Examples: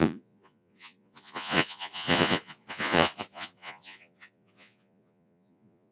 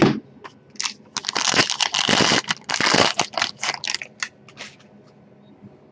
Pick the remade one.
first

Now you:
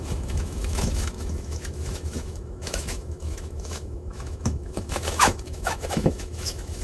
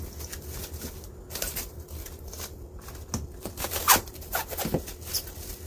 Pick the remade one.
first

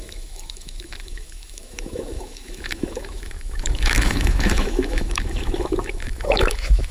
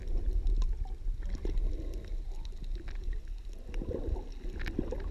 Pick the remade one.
first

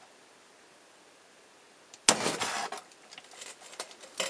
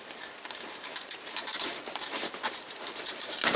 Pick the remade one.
second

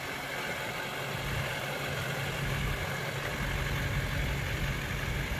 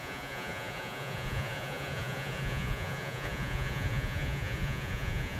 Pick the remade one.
second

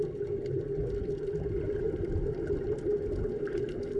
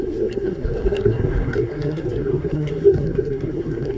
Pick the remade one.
second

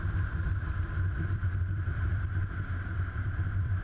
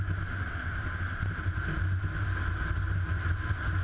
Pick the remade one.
first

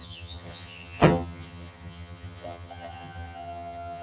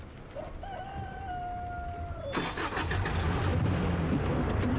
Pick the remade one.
first